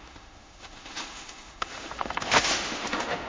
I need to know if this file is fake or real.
fake